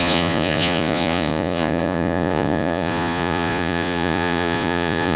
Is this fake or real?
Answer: fake